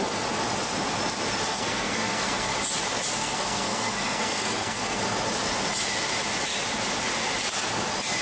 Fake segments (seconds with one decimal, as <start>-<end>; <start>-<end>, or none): 1.5-2.5; 3.2-5.0